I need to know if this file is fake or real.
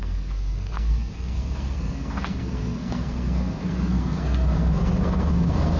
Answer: fake